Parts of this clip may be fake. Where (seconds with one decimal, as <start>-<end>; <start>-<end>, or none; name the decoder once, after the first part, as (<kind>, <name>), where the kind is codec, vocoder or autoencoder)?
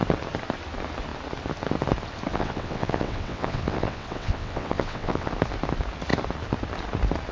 2.3-5.3 (vocoder, WaveNeXt)